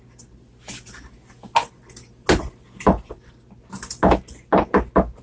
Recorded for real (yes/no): yes